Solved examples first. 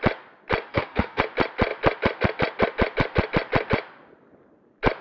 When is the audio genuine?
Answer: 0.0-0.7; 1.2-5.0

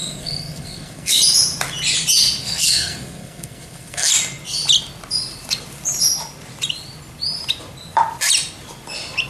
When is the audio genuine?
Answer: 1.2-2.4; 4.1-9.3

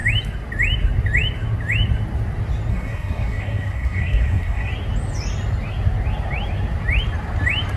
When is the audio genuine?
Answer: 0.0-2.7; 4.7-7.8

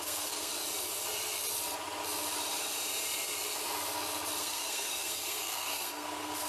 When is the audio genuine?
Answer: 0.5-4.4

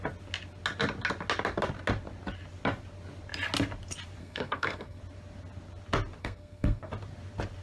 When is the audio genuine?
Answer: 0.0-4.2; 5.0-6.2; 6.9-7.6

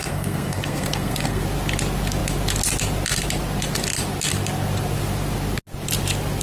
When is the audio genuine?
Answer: 1.4-6.4

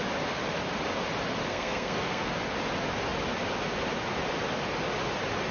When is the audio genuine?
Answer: 0.0-1.5; 2.3-5.5